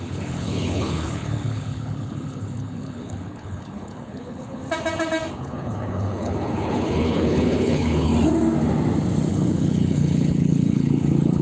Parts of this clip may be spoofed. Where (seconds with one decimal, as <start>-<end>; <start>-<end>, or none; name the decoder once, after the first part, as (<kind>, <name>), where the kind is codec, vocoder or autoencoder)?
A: 0.0-4.6 (codec, HILCodec); 5.3-8.1; 9.3-11.4